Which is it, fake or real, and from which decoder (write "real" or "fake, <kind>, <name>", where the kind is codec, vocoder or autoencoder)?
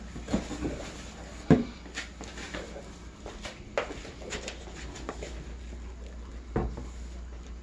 real